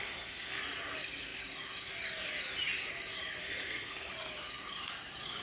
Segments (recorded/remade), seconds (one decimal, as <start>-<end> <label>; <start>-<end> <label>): 0.0-0.6 remade; 0.6-3.4 recorded; 3.4-4.1 remade; 4.1-5.4 recorded